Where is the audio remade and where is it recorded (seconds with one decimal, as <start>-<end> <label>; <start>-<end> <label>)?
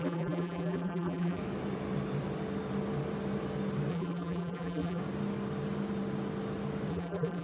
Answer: 0.0-1.4 remade; 1.4-3.9 recorded; 3.9-5.0 remade; 5.0-6.9 recorded; 6.9-7.4 remade